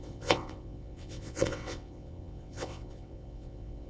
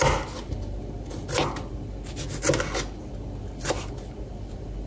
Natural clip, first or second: second